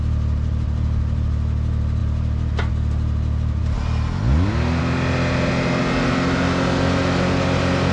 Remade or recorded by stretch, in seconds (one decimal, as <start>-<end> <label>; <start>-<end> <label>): 0.0-7.9 recorded